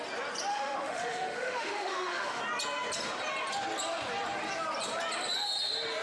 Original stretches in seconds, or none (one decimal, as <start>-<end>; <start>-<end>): 0.0-0.5; 2.4-6.0